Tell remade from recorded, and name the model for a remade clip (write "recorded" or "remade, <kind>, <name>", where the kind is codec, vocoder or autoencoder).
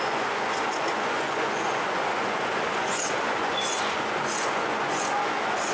remade, vocoder, Vocos